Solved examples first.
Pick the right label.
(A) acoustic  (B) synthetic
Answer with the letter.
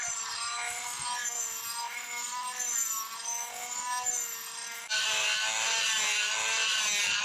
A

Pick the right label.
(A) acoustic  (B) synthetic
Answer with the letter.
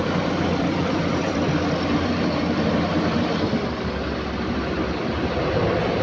B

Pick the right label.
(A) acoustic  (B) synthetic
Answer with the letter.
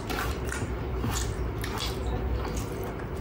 A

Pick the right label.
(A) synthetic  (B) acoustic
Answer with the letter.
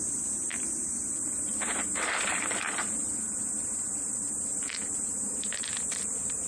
A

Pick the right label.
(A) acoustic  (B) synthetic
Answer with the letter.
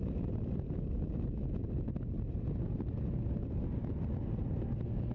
A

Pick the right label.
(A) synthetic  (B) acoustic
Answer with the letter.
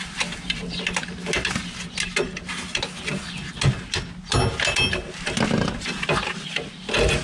B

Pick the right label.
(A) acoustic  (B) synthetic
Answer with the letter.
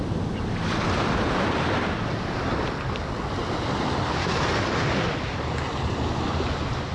A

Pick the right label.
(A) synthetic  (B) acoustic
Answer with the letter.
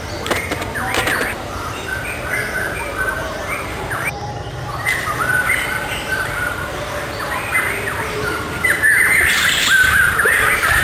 A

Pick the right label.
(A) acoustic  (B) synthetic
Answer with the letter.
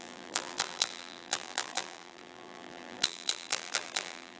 B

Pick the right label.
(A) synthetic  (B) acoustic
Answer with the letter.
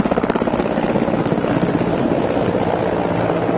B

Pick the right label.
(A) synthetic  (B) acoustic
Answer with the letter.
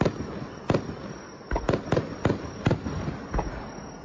B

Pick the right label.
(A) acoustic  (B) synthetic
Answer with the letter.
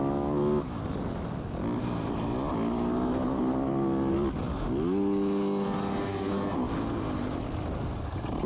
A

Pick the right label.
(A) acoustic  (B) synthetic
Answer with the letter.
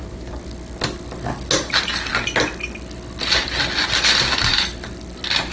A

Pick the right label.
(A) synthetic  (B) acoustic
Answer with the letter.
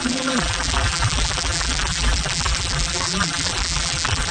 A